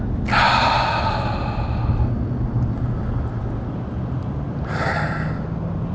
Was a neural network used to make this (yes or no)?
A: no